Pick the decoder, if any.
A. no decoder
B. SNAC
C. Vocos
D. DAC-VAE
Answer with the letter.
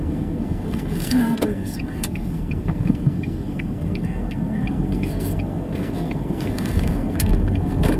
B